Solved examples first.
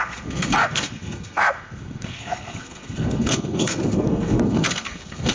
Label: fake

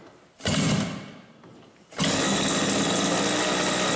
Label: real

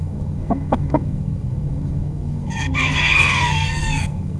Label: fake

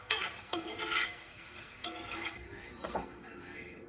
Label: fake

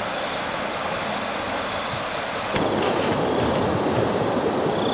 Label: real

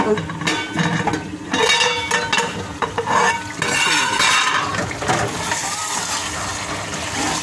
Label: real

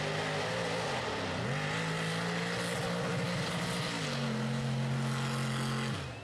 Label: real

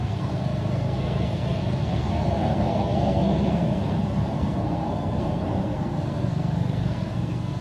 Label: fake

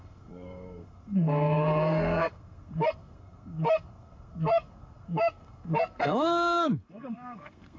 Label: fake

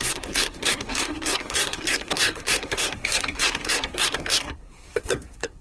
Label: fake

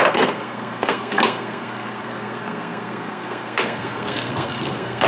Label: fake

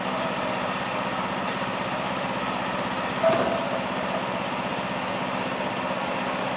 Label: real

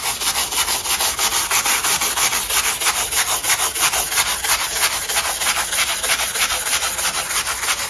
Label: real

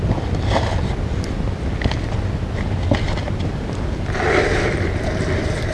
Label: real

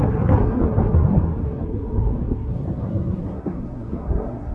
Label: fake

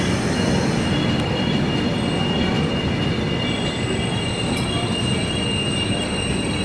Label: real